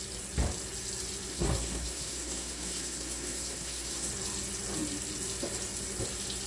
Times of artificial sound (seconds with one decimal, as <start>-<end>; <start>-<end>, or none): 1.3-4.1

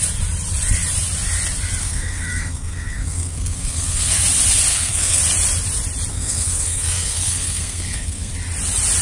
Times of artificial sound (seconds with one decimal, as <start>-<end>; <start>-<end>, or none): 1.8-4.2; 4.7-5.2; 6.1-8.3

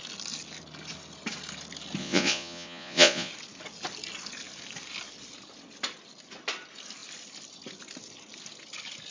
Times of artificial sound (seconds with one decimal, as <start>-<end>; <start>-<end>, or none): 2.0-3.3

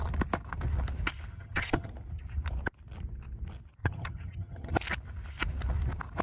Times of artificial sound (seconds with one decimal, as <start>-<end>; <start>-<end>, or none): 1.3-1.9; 3.8-4.7

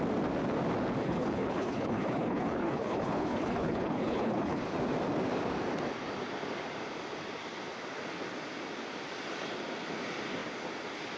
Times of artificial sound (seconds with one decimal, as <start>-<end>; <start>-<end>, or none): 1.0-4.6

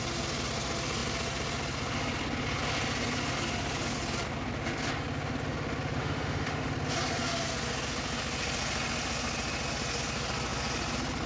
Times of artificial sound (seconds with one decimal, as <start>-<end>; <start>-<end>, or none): 6.0-6.7

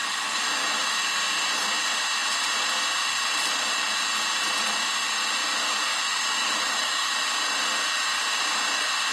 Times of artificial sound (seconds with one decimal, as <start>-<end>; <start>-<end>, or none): 0.0-1.0; 5.9-7.1